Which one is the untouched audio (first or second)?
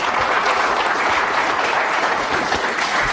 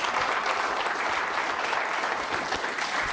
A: second